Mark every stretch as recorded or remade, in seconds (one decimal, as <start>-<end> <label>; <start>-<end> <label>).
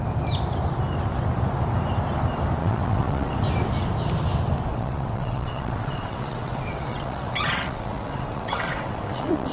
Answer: 0.0-2.6 recorded; 2.6-3.3 remade; 3.3-4.7 recorded; 4.7-9.5 remade